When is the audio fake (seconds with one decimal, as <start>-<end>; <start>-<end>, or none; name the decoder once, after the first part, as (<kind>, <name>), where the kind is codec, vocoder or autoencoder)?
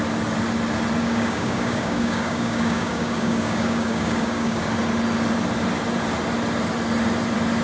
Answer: 1.0-4.7 (codec, DAC)